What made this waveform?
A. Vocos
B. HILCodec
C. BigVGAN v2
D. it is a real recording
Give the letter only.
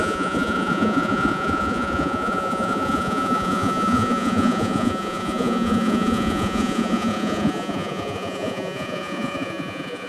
A